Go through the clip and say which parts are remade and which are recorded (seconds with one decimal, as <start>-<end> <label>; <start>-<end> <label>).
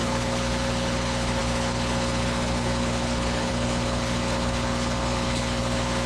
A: 0.0-6.1 remade